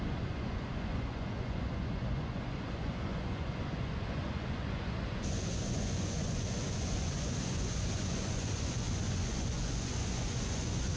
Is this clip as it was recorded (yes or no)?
no